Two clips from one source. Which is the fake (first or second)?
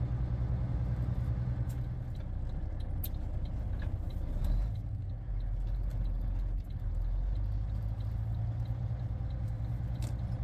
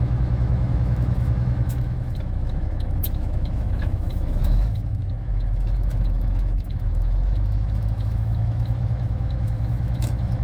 second